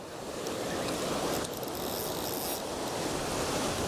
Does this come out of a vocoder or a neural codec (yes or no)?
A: no